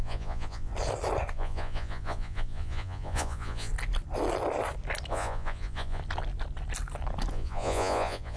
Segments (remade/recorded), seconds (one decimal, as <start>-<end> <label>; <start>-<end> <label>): 0.0-0.7 remade; 0.7-1.3 recorded; 1.3-3.7 remade; 3.7-5.1 recorded; 5.1-6.0 remade; 6.0-7.3 recorded; 7.3-8.4 remade